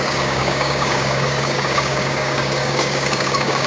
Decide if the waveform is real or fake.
fake